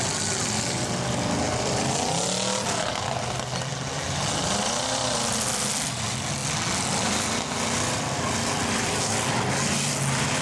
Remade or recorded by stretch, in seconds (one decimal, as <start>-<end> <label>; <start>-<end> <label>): 0.0-3.7 recorded; 3.7-4.5 remade; 4.5-10.4 recorded